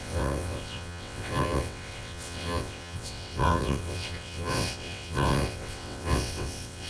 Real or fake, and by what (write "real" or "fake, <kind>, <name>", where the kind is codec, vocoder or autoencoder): fake, vocoder, WaveNeXt